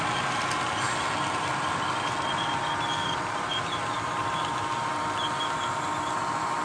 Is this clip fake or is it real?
real